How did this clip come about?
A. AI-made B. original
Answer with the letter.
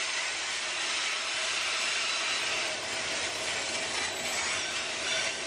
B